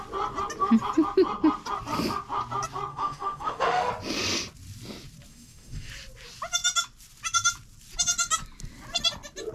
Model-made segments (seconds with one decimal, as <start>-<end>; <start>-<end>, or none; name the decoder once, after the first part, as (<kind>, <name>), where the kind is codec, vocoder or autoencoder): 2.9-3.9 (autoencoder, DAC-VAE); 5.3-5.9